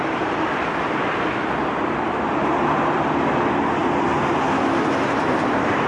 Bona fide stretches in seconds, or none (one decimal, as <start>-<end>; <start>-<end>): 3.8-5.1